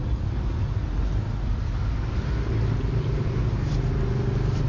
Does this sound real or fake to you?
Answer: real